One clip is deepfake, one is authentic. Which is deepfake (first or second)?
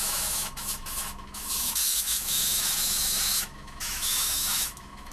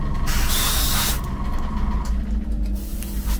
first